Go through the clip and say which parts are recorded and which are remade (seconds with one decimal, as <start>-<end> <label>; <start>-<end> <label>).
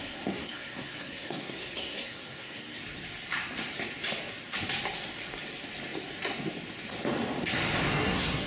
0.0-2.8 remade; 2.8-7.9 recorded; 7.9-8.5 remade